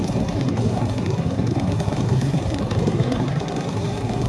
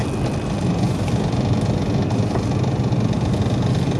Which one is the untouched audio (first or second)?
second